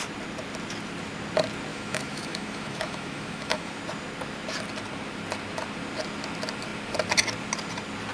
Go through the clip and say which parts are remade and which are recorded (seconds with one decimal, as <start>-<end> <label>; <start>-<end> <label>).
0.0-1.7 recorded; 1.7-3.8 remade; 3.8-8.1 recorded